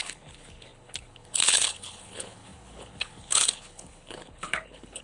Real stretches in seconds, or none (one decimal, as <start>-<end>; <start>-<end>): none